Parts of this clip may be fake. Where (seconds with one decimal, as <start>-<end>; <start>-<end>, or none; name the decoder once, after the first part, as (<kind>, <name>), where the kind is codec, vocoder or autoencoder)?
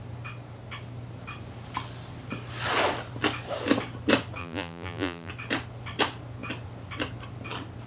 4.4-5.3 (vocoder, BigVGAN v2)